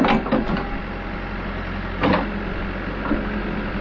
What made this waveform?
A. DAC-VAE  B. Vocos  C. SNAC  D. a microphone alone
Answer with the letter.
D